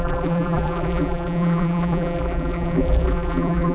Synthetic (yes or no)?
yes